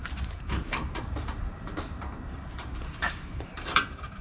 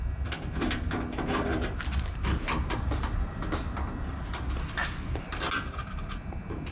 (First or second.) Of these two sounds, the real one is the second